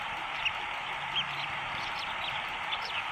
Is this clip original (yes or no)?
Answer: yes